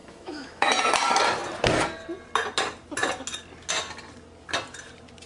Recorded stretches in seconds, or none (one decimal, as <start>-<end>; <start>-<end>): 0.7-5.3